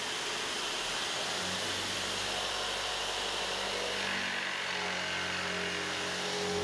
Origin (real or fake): real